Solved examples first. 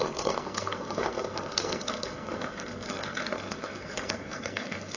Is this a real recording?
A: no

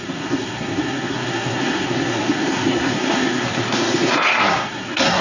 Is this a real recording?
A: no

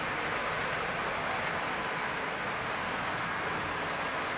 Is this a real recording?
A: yes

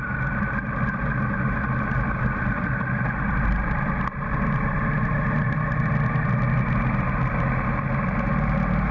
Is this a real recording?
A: yes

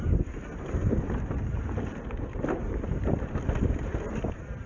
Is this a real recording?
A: yes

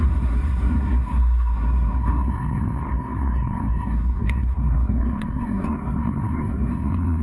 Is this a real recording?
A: no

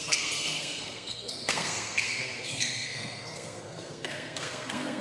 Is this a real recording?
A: no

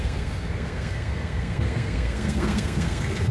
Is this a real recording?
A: no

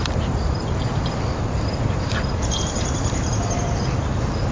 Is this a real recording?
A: yes